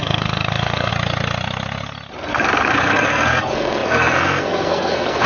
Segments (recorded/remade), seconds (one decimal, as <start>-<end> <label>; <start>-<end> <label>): 0.0-0.9 remade; 0.9-2.3 recorded; 2.3-5.3 remade